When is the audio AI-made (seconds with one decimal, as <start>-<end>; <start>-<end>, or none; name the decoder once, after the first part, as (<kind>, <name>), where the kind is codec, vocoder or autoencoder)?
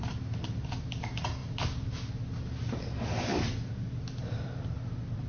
none